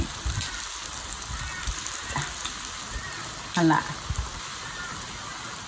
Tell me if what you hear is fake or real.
real